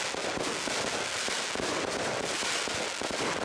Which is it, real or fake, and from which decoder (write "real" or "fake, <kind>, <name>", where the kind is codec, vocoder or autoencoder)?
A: real